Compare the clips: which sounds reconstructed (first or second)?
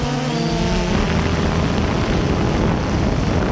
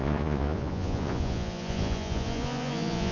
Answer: second